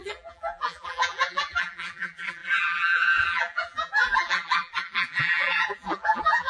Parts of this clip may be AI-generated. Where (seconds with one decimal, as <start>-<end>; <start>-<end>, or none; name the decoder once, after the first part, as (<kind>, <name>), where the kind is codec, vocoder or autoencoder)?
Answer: 0.0-6.5 (vocoder, BigVGAN v2)